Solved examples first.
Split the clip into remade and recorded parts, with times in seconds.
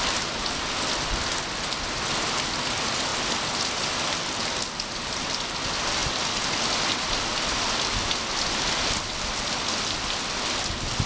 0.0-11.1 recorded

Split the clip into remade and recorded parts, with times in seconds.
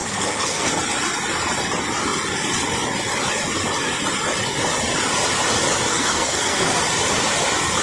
0.0-0.7 remade; 0.7-5.9 recorded; 5.9-6.8 remade; 6.8-7.8 recorded